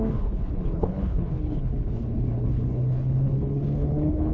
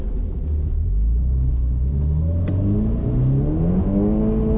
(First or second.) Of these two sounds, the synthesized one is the first